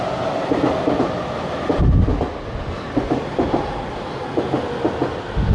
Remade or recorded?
recorded